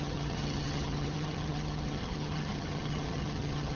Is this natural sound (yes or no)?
no